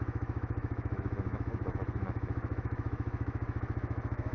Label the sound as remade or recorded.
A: remade